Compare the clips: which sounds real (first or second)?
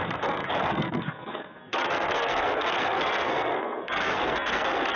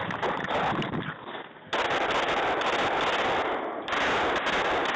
second